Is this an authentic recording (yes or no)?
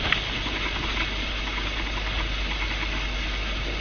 yes